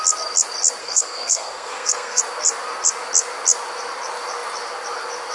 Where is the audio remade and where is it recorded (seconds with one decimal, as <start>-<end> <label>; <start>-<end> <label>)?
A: 0.0-0.8 recorded; 0.8-2.2 remade; 2.2-5.3 recorded